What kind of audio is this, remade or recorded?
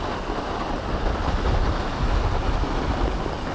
recorded